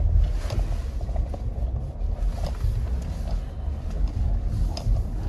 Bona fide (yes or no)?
yes